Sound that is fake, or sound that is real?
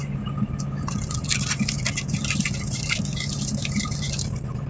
real